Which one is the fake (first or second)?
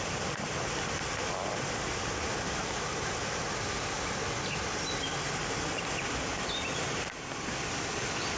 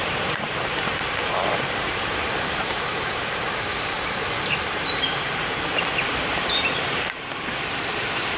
second